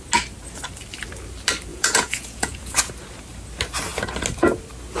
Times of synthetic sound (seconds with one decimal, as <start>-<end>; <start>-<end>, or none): 1.7-2.9